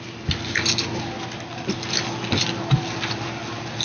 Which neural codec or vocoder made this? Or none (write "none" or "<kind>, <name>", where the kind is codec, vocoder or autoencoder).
none